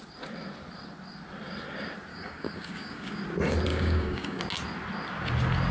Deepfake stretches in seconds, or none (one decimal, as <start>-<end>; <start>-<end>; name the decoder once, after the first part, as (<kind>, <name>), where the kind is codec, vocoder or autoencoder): 2.1-3.2 (codec, DAC); 3.7-4.4